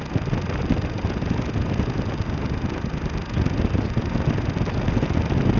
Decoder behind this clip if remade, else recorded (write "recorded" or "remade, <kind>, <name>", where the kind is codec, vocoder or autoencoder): recorded